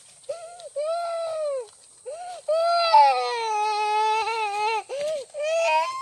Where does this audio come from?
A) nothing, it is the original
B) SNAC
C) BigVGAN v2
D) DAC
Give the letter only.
A